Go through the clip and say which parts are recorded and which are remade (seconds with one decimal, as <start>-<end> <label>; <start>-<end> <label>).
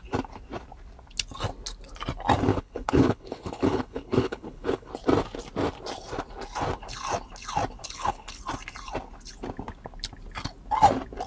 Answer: 0.0-2.5 recorded; 2.5-4.9 remade; 4.9-7.8 recorded; 7.8-8.4 remade; 8.4-11.3 recorded